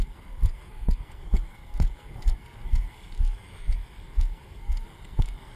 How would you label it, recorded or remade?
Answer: remade